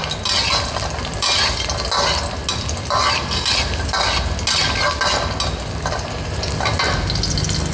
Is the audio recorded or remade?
recorded